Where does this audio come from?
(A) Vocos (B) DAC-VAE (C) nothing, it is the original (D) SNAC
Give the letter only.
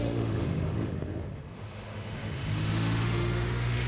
B